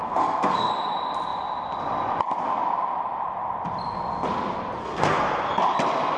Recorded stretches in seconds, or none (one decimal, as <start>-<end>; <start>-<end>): 0.7-4.8; 5.5-6.2